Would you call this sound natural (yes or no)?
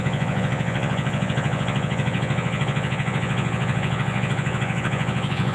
no